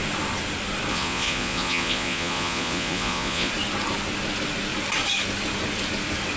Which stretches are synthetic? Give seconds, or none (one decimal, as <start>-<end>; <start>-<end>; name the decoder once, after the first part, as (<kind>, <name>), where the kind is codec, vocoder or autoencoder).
0.9-3.5 (vocoder, Vocos)